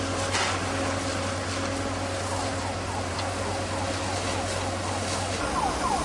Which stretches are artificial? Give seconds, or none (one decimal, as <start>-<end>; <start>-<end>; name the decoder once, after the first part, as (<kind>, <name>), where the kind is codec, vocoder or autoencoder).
none